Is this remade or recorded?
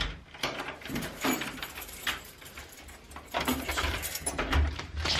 remade